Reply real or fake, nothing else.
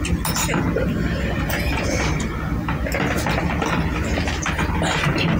real